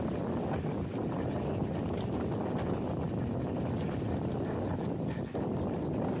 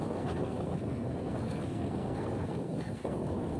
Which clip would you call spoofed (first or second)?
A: second